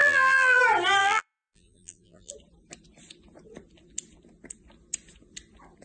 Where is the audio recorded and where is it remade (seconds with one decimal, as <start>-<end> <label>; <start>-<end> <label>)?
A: 0.0-0.6 remade; 0.6-1.0 recorded; 1.0-2.3 remade; 2.3-5.8 recorded